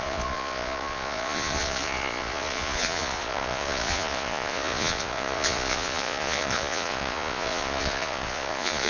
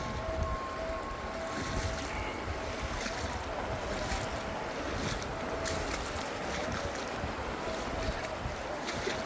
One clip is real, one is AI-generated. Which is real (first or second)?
second